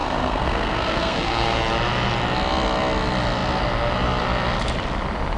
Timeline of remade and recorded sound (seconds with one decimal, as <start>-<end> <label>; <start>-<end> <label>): 0.0-1.6 remade; 1.6-5.4 recorded